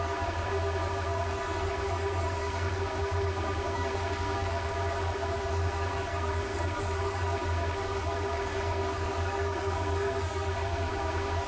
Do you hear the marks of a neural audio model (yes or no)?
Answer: yes